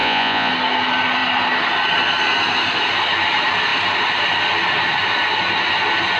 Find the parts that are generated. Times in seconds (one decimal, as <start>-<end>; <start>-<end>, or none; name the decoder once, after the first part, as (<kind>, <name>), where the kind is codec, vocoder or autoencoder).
0.0-0.5 (vocoder, Vocos)